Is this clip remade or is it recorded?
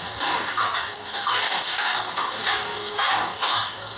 remade